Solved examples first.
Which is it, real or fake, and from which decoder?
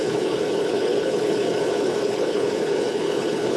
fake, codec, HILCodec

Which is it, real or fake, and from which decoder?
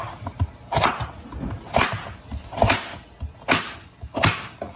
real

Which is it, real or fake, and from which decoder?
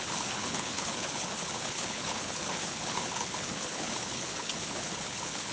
fake, codec, HILCodec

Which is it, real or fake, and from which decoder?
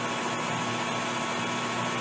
real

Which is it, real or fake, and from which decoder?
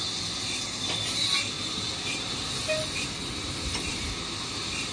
real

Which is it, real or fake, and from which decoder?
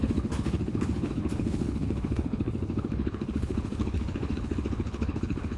fake, codec, HILCodec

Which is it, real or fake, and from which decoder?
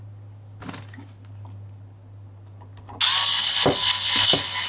real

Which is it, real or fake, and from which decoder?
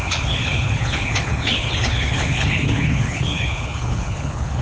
fake, codec, HILCodec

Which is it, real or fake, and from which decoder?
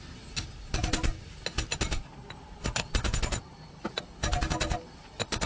real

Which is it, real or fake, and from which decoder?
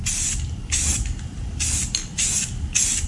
real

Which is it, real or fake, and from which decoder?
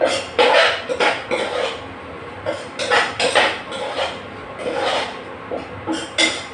real